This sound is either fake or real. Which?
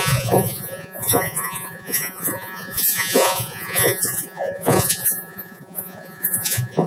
fake